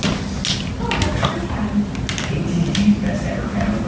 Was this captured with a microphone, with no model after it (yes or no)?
yes